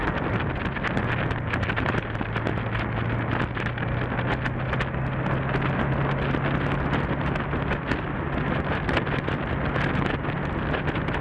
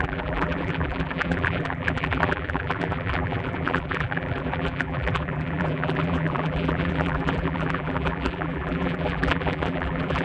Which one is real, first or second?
first